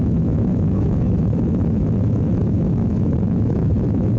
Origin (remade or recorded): remade